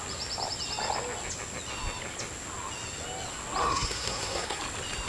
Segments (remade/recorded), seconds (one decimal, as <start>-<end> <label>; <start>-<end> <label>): 0.0-3.6 recorded; 3.6-4.6 remade; 4.6-5.1 recorded